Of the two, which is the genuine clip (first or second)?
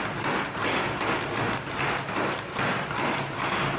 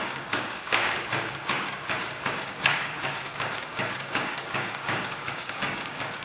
first